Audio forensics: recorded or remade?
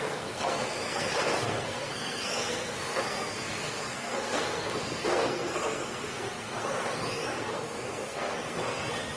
remade